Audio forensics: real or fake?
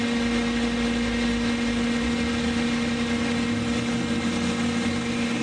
real